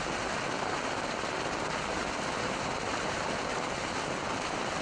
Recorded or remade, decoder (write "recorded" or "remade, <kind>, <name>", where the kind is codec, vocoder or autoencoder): recorded